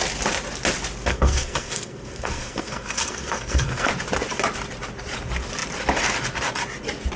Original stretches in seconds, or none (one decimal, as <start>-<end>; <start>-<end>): 0.0-1.1; 3.9-7.2